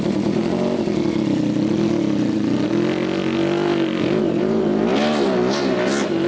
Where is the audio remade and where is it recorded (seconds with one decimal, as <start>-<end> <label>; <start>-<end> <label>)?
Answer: 0.0-0.4 remade; 0.4-4.2 recorded; 4.2-4.8 remade; 4.8-6.3 recorded